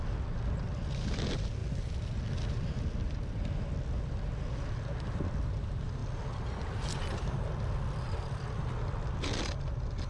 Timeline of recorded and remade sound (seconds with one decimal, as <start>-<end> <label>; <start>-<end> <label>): 0.0-10.1 recorded